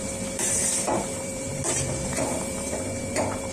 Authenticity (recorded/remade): remade